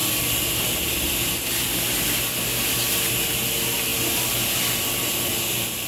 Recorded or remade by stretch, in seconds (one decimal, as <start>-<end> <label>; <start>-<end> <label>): 0.0-5.9 recorded